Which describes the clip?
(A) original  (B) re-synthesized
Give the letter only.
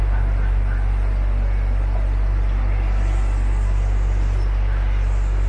A